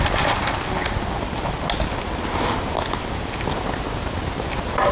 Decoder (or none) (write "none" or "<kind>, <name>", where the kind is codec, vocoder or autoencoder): none